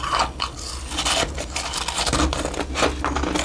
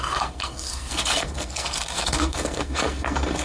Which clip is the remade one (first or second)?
second